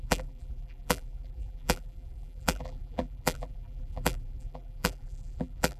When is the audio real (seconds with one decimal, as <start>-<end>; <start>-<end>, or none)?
none